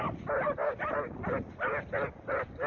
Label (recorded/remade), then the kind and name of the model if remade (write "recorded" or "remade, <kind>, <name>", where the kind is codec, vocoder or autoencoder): recorded